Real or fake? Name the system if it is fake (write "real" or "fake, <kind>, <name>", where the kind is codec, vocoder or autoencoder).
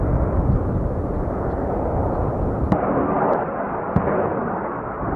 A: real